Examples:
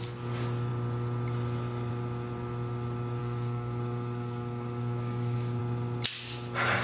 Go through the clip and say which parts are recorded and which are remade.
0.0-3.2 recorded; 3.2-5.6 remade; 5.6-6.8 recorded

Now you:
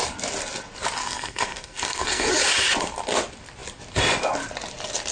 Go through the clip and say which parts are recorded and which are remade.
0.0-1.0 recorded; 1.0-2.3 remade; 2.3-5.1 recorded

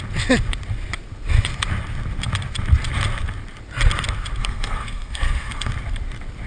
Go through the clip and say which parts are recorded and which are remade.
0.0-4.4 recorded; 4.4-5.7 remade; 5.7-6.5 recorded

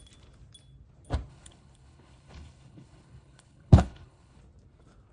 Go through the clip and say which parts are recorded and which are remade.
0.0-1.3 recorded; 1.3-4.4 remade; 4.4-5.1 recorded

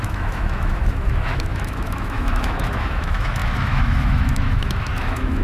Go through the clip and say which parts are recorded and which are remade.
0.0-5.4 remade